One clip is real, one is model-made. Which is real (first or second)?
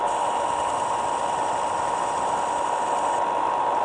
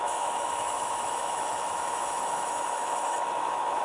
first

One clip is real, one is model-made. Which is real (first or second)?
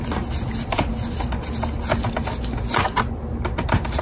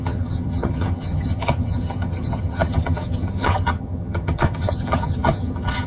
first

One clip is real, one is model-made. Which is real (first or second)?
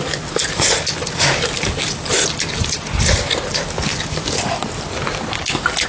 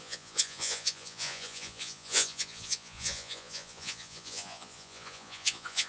first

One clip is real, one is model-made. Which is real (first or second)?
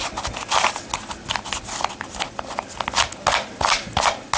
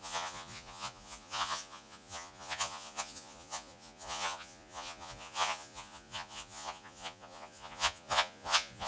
first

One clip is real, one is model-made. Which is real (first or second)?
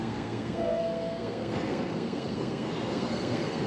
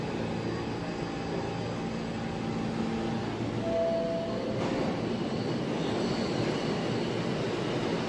second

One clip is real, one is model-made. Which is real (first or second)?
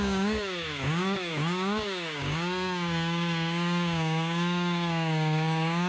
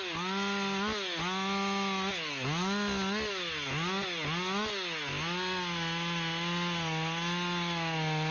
second